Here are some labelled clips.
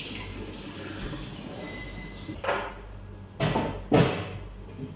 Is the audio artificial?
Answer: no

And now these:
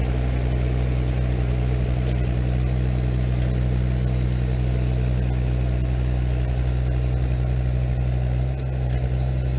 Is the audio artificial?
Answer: no